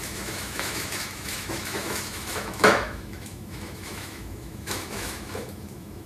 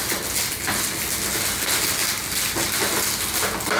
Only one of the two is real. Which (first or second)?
second